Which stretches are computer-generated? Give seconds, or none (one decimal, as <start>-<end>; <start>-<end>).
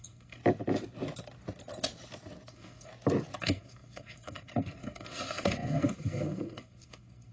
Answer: 0.0-0.4; 2.5-2.9; 3.4-7.3